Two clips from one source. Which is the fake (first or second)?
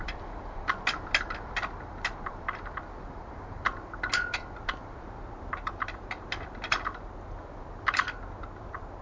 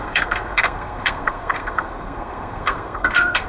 second